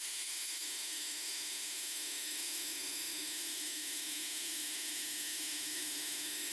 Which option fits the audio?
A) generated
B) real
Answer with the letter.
A